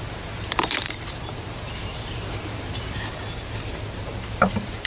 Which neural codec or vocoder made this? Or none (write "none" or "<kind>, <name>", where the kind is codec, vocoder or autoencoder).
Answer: vocoder, BigVGAN v2